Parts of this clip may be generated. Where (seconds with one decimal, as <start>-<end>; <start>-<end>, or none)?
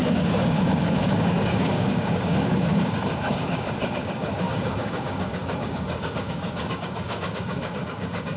0.0-8.4